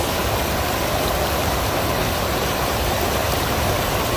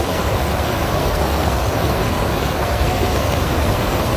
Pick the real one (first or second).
first